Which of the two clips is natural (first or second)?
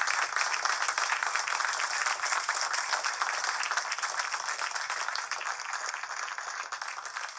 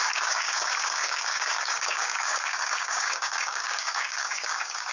first